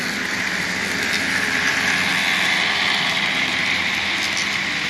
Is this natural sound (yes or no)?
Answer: yes